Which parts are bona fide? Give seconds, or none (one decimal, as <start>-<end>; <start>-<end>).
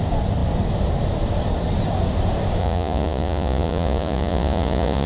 0.0-2.6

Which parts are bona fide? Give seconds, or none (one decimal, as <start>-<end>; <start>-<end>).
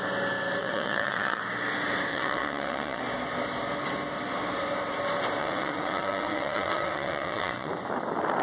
0.0-0.6; 1.4-2.1; 3.0-5.4; 7.7-8.4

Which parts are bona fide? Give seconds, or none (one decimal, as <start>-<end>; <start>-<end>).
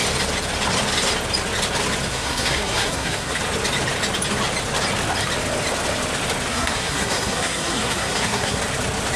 0.0-2.1; 3.4-6.5; 8.6-9.2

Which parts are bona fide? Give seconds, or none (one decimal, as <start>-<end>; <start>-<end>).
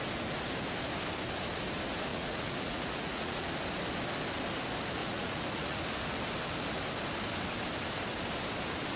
0.0-2.1; 3.5-5.0; 5.8-9.0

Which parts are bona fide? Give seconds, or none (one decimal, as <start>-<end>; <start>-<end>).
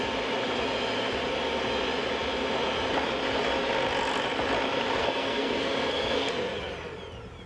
0.0-5.0; 6.3-7.5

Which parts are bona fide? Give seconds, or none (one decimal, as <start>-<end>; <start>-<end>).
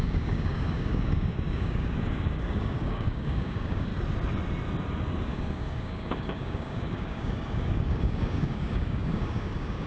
3.9-5.2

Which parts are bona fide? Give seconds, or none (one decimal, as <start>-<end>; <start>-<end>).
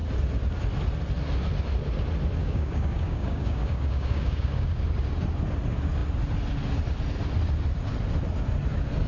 0.0-2.4; 4.8-9.1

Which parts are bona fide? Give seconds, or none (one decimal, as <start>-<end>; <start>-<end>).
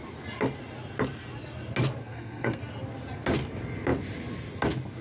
0.0-2.0; 2.6-5.0